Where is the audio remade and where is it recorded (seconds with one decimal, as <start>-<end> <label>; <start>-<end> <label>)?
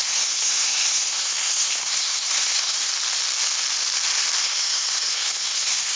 0.0-2.9 remade; 2.9-4.4 recorded; 4.4-6.0 remade